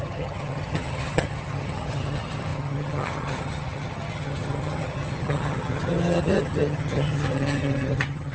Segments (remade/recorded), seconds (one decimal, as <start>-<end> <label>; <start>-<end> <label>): 0.0-8.3 remade